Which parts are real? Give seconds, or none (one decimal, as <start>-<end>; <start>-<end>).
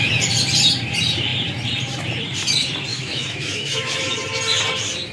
0.0-2.9; 4.0-5.1